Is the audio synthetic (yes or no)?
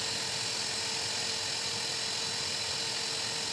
no